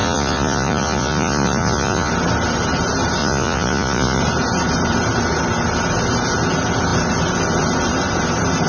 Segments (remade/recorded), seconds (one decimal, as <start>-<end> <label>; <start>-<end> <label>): 0.0-2.1 remade; 2.1-3.2 recorded; 3.2-4.2 remade; 4.2-8.7 recorded